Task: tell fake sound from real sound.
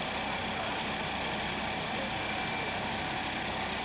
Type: real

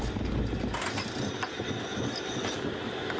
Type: real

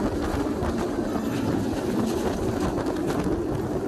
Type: real